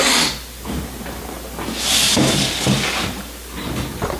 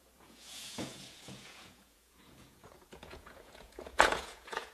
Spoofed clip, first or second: second